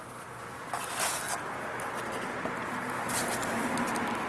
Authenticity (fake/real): real